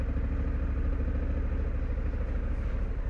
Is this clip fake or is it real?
real